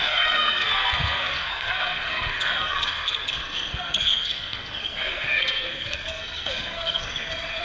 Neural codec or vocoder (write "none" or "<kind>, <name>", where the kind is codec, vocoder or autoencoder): codec, SNAC